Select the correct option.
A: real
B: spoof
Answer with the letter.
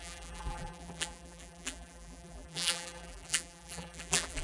B